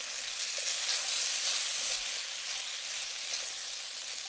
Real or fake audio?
real